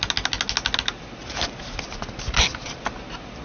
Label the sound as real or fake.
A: real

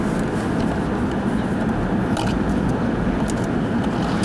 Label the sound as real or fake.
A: real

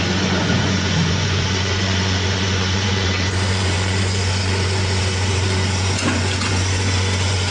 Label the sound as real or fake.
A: fake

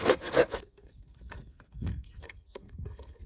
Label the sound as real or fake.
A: fake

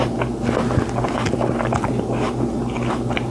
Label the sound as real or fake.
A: real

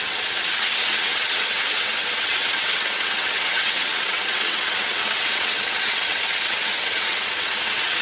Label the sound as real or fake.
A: fake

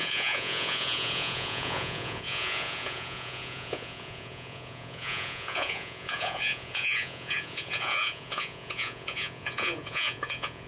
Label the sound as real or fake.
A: fake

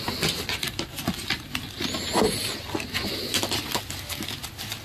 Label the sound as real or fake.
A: real